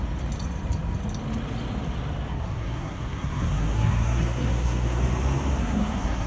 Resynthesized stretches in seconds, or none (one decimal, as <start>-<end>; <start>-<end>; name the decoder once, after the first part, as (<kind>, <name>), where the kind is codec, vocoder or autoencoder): 2.3-5.0 (codec, SNAC); 5.6-6.3